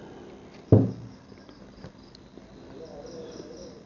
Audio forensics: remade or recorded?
recorded